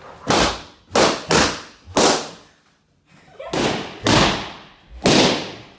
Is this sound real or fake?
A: real